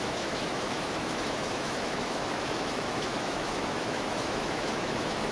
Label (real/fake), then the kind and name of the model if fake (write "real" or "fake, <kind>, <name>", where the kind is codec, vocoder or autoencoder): fake, autoencoder, DAC-VAE